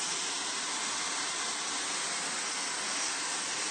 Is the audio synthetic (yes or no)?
no